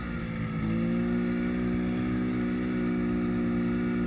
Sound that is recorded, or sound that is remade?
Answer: recorded